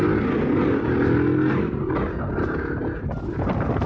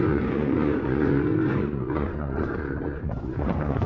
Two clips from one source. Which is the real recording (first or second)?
first